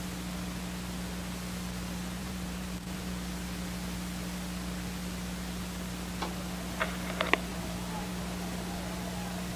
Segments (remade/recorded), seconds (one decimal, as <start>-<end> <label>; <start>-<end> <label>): 0.0-2.2 recorded; 2.2-3.1 remade; 3.1-7.5 recorded; 7.5-8.1 remade; 8.1-9.6 recorded